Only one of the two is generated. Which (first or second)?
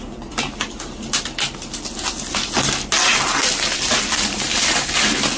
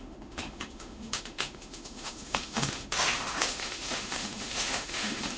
second